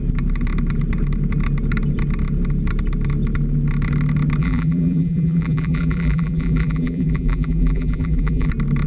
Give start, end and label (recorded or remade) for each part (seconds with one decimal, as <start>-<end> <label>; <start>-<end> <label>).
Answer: 0.0-4.4 recorded; 4.4-8.5 remade; 8.5-8.9 recorded